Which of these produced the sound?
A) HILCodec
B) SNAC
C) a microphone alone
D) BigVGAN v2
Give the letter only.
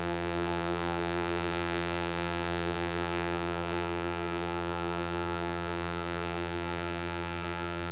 D